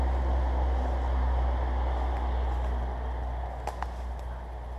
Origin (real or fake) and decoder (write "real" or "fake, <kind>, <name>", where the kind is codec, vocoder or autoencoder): real